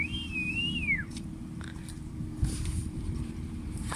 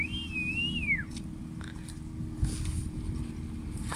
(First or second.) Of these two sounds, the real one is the second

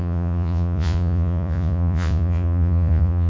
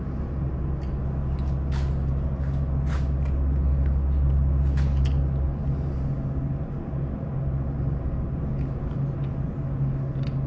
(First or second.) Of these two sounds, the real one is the second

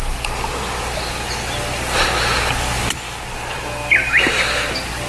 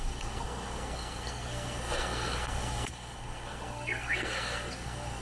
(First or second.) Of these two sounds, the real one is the first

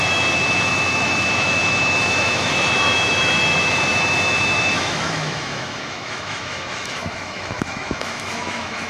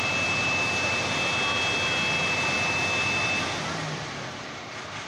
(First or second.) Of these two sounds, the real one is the second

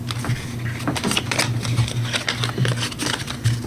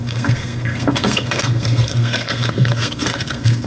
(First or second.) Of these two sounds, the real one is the first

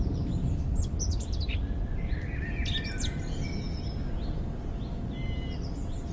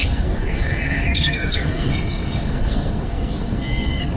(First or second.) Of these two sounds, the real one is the first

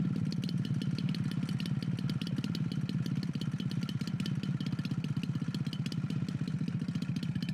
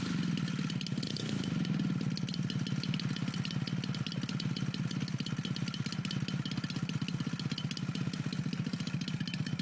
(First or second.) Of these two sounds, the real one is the second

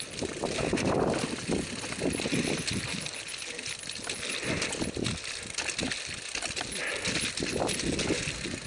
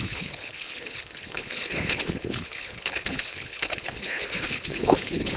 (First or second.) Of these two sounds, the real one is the first